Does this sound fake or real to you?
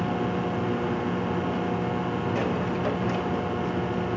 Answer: real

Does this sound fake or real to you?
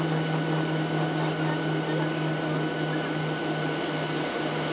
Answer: real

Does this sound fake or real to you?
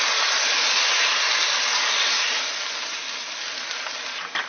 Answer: real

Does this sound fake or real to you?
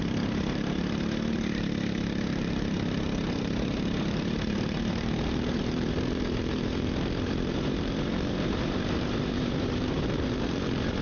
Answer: fake